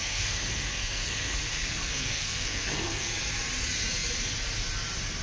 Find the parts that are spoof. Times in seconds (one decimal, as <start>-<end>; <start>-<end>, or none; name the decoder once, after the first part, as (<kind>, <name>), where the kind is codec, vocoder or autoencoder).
0.0-3.1 (codec, SNAC)